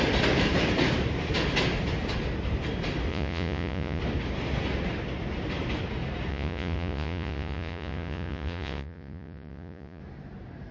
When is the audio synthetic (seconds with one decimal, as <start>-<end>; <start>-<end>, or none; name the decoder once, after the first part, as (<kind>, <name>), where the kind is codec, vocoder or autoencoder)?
3.1-4.0 (vocoder, Vocos); 6.3-10.0